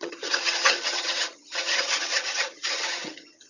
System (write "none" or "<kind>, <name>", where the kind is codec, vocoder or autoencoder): vocoder, HiFi-GAN